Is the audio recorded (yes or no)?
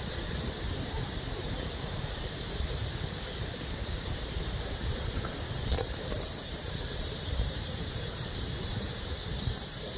no